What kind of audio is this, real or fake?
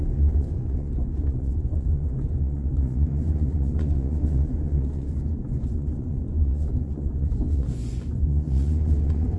fake